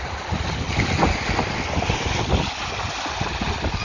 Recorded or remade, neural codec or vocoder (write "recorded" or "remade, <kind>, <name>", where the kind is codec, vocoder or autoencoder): recorded